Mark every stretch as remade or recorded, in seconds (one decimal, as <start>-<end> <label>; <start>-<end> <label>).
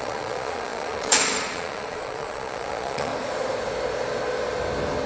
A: 0.0-3.1 remade; 3.1-5.1 recorded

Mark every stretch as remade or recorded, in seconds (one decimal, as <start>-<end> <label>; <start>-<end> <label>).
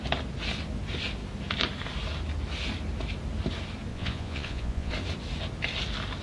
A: 0.0-3.9 recorded; 3.9-4.9 remade; 4.9-6.2 recorded